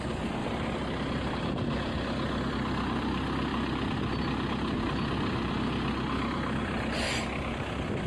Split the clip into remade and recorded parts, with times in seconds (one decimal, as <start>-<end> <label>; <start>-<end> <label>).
0.0-8.1 recorded